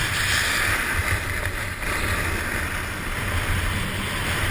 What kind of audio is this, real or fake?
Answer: real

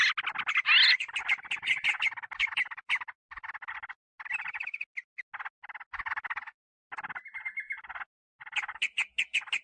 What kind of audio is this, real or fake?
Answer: real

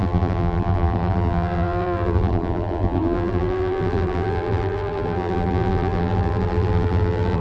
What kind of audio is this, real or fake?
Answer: fake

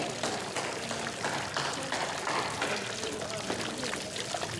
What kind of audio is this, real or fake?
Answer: real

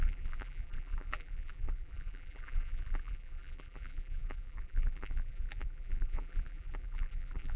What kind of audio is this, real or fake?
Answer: fake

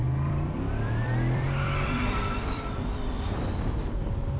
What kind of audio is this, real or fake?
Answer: fake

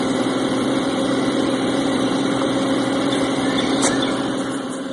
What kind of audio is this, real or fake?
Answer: fake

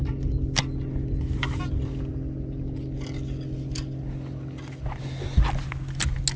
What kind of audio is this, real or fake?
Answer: real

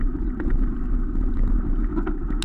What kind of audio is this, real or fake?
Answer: real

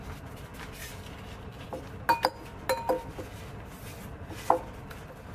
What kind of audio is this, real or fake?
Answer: real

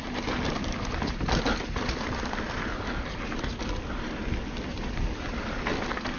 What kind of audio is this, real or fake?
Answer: real